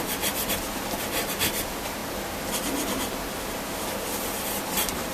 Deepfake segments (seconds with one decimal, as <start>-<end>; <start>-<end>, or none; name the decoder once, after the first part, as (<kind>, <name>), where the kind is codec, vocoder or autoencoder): none